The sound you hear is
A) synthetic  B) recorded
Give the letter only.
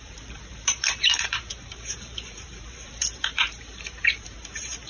A